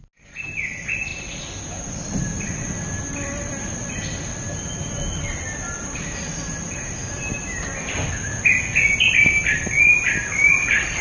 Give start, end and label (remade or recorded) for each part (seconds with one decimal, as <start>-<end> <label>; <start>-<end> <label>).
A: 0.0-6.3 recorded; 6.3-7.3 remade; 7.3-11.0 recorded